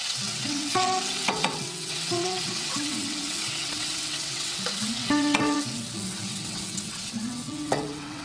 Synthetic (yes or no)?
yes